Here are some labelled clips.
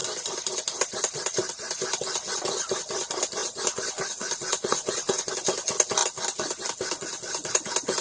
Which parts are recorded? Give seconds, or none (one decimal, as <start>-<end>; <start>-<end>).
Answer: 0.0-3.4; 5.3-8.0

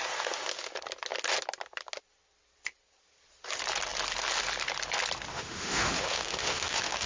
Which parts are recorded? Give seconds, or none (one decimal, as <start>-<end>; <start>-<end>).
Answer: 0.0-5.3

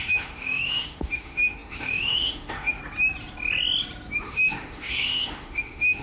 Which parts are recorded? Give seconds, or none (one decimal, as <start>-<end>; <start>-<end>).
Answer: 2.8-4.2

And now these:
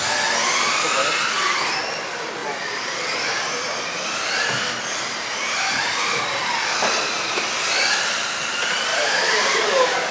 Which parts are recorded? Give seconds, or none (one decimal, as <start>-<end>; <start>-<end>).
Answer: 0.0-2.4; 3.9-5.3; 6.4-8.9